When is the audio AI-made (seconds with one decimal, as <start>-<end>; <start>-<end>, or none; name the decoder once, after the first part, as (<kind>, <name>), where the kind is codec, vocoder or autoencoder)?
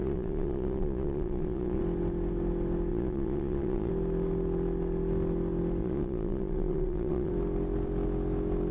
0.0-1.8 (vocoder, Vocos); 2.9-3.9; 5.8-7.3